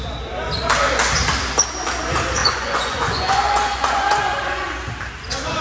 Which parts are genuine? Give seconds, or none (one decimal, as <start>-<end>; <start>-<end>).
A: 0.0-2.4; 4.7-5.6